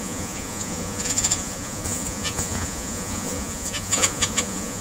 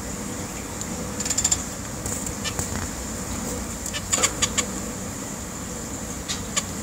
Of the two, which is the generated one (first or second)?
first